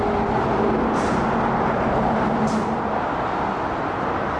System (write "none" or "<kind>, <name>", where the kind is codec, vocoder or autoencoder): none